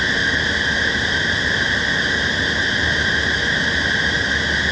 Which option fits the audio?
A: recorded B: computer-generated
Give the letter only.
A